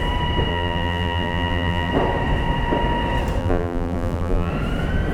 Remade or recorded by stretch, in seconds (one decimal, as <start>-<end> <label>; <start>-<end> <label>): 0.0-0.5 recorded; 0.5-1.9 remade; 1.9-3.4 recorded; 3.4-4.5 remade; 4.5-5.1 recorded